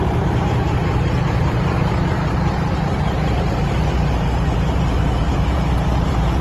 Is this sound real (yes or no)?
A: no